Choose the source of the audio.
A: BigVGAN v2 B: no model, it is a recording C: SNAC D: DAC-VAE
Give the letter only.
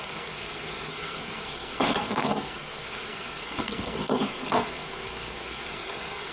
C